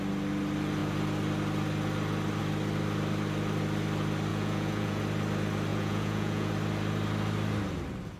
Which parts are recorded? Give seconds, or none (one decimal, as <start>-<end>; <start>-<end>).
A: 0.0-4.3; 5.0-5.7; 6.5-8.2